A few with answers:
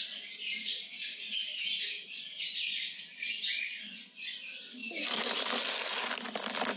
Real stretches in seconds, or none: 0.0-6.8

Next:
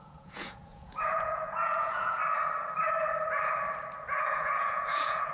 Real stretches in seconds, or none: 2.2-4.2